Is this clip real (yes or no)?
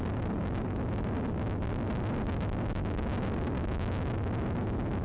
yes